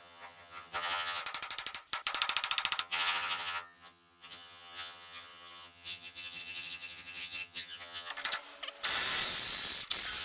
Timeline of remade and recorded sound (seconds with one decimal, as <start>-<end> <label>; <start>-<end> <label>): 0.0-1.2 remade; 1.2-2.8 recorded; 2.8-8.1 remade; 8.1-10.2 recorded